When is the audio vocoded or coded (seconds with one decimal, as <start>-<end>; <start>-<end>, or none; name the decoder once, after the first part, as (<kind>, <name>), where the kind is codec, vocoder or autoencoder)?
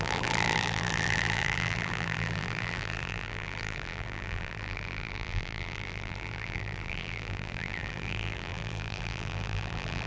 0.0-10.1 (vocoder, BigVGAN v2)